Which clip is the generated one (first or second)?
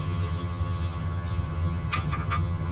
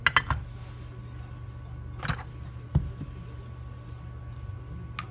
first